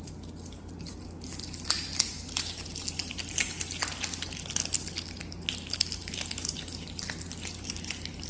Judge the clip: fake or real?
real